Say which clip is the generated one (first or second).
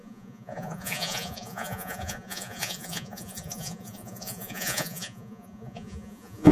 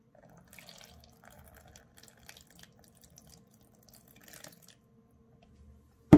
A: first